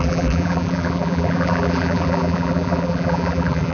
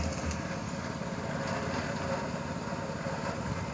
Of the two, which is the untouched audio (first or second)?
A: second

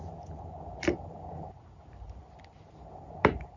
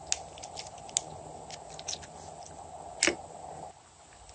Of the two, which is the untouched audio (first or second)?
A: second